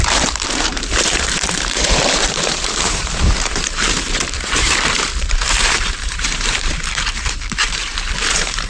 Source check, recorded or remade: remade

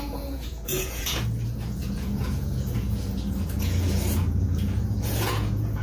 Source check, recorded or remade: remade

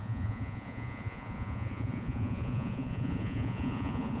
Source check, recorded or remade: remade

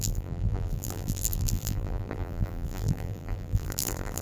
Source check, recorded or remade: remade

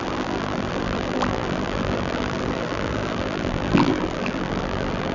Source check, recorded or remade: remade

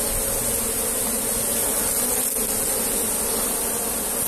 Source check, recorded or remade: recorded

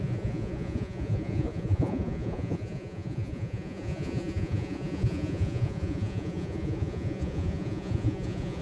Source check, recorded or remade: remade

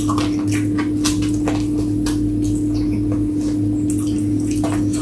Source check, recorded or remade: recorded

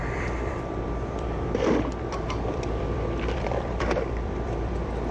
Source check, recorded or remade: remade